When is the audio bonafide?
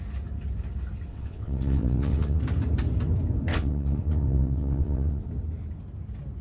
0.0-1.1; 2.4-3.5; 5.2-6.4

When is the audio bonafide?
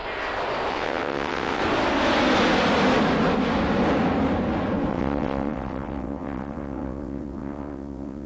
0.0-0.7; 1.6-4.9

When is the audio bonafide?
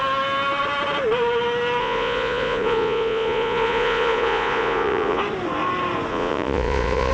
0.0-1.8; 5.2-6.1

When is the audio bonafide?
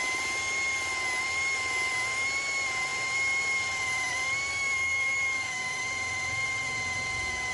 0.0-4.5; 5.8-7.5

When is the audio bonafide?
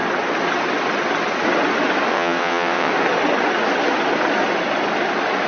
0.0-2.1; 2.9-5.5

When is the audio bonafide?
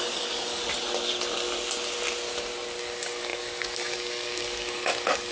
0.6-2.8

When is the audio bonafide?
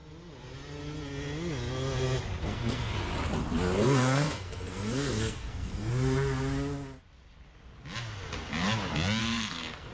0.0-2.4; 2.9-3.8; 5.9-9.2